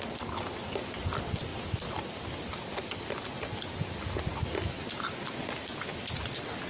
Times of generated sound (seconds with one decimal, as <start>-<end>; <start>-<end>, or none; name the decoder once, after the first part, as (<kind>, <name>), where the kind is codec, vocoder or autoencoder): none